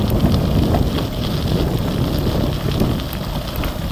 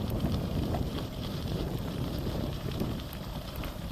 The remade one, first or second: second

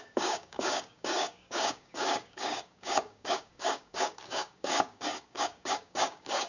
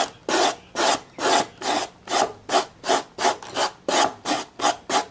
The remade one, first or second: first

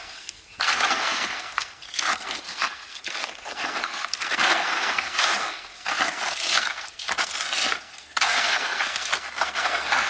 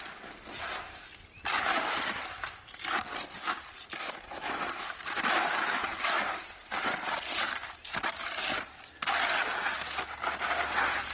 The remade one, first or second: first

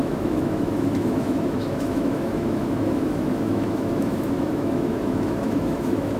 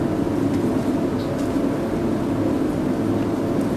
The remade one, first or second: first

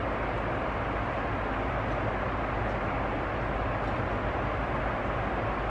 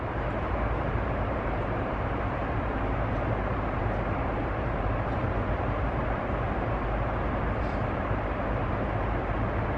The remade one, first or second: second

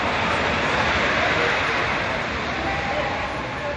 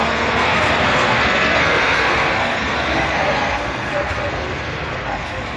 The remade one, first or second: second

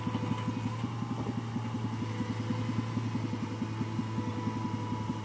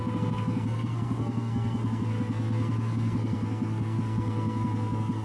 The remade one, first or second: second